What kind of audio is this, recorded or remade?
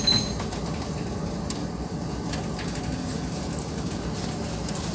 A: recorded